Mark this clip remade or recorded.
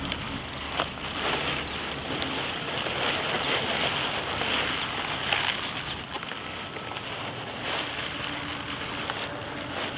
recorded